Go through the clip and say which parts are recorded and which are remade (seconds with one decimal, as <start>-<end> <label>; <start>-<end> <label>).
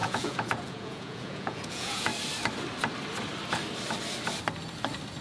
0.0-2.1 remade; 2.1-5.2 recorded